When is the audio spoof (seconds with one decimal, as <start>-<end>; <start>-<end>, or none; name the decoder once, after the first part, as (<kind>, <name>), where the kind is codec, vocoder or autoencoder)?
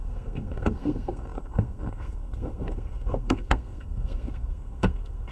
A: 0.0-5.3 (codec, SNAC)